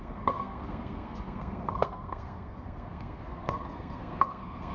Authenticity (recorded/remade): remade